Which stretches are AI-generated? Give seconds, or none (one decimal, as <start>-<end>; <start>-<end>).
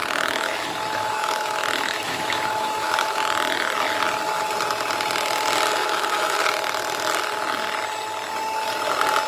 0.0-3.2; 5.8-6.5